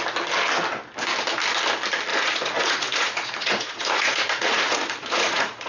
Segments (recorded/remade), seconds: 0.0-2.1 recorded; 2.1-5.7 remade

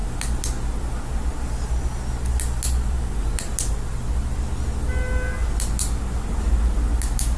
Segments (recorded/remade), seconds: 0.0-7.4 recorded

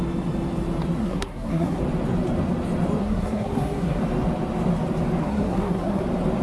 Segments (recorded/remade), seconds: 0.0-1.0 recorded; 1.0-1.8 remade; 1.8-3.0 recorded; 3.0-4.0 remade; 4.0-5.2 recorded; 5.2-6.0 remade; 6.0-6.4 recorded

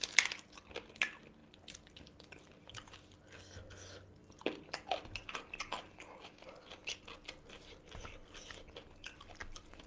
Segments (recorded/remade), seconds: 0.0-9.9 recorded

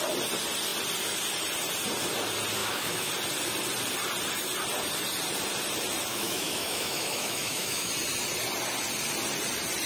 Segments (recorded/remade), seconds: 0.0-2.6 recorded; 2.6-3.1 remade; 3.1-6.1 recorded; 6.1-7.9 remade; 7.9-9.9 recorded

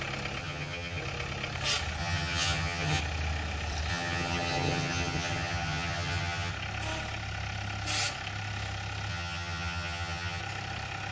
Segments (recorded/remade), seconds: 0.0-0.4 recorded; 0.4-1.0 remade; 1.0-2.0 recorded; 2.0-3.0 remade; 3.0-3.9 recorded; 3.9-6.5 remade; 6.5-9.1 recorded; 9.1-10.4 remade; 10.4-11.1 recorded